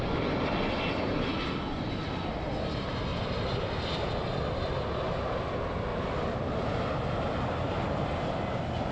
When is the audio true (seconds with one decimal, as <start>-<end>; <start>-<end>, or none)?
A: 0.0-3.1; 4.1-5.9; 6.8-8.9